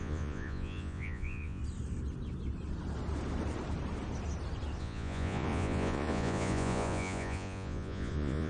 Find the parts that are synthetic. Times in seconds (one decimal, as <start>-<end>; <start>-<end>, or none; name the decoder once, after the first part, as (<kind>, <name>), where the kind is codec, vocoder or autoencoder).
0.0-1.6 (vocoder, Vocos); 4.8-8.5